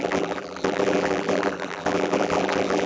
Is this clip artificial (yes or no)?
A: yes